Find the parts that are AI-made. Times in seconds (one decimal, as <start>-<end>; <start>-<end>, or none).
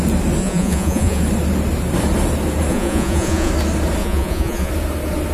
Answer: 0.4-1.2; 2.7-3.5; 4.0-4.7